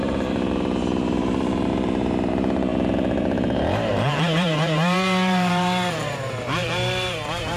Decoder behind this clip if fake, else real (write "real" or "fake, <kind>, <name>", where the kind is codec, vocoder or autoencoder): fake, vocoder, BigVGAN v2